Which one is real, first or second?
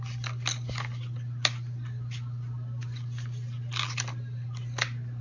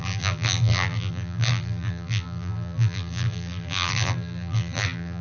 first